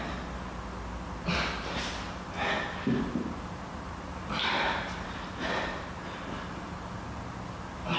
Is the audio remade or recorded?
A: recorded